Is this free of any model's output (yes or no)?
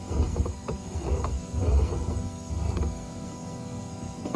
no